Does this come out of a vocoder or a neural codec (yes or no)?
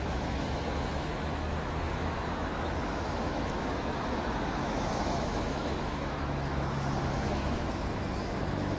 yes